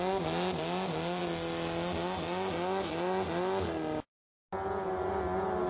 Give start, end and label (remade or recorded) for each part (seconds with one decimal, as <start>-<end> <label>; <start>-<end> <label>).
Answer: 0.0-5.7 recorded

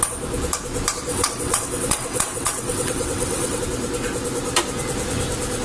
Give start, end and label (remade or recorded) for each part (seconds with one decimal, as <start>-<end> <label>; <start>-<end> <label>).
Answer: 0.0-1.1 recorded; 1.1-3.6 remade; 3.6-5.6 recorded

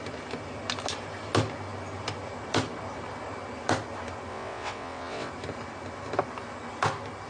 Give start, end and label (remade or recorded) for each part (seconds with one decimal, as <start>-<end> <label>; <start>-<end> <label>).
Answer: 0.0-4.3 recorded; 4.3-5.3 remade; 5.3-7.3 recorded

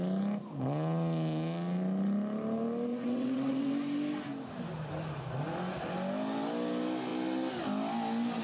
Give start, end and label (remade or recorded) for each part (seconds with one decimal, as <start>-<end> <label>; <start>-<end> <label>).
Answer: 0.0-2.9 recorded; 2.9-3.7 remade; 3.7-8.4 recorded

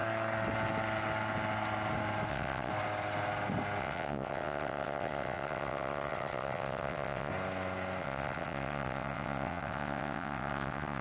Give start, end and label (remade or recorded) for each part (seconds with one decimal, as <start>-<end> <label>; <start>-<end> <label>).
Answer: 0.0-2.3 recorded; 2.3-2.7 remade; 2.7-3.8 recorded; 3.8-7.3 remade; 7.3-8.0 recorded; 8.0-11.0 remade

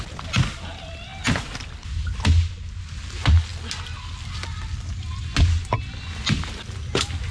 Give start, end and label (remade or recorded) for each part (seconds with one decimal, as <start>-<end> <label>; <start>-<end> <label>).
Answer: 0.0-7.3 recorded